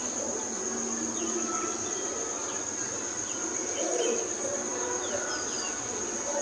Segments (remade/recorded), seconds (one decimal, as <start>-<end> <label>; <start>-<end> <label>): 0.0-6.4 recorded

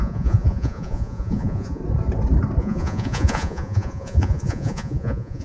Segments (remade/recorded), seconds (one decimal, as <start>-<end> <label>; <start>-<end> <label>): 0.0-1.8 remade; 1.8-2.6 recorded; 2.6-5.4 remade

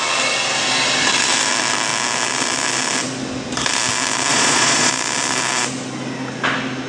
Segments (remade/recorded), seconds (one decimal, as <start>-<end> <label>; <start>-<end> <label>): 0.0-4.3 recorded; 4.3-4.9 remade; 4.9-6.9 recorded